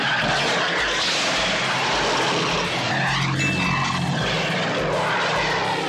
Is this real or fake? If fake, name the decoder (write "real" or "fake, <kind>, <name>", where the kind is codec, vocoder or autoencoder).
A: real